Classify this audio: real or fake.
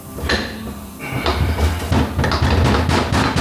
real